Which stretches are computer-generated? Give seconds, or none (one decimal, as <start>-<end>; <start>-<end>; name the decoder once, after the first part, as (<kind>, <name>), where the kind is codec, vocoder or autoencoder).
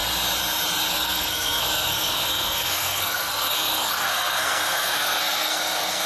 0.9-6.1 (codec, SNAC)